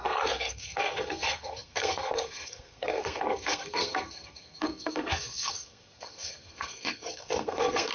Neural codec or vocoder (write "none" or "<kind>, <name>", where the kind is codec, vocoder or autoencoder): codec, SNAC